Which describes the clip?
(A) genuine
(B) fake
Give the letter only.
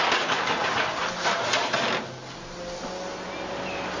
A